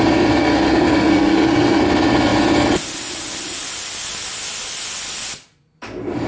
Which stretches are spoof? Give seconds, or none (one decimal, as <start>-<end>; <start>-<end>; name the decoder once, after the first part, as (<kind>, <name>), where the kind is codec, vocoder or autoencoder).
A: 0.4-1.8 (codec, SNAC)